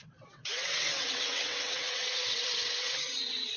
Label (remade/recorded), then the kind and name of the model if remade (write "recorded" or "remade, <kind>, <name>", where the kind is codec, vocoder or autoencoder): remade, vocoder, WaveNeXt